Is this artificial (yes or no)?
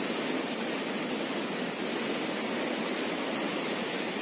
no